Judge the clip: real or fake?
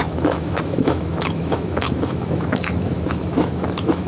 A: fake